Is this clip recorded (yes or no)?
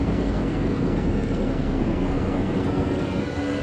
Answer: no